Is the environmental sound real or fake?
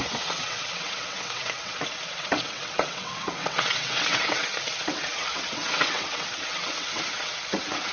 fake